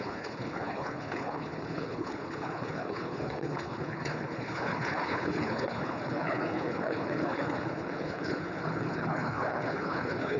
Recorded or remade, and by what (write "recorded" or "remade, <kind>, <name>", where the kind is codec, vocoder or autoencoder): remade, codec, HILCodec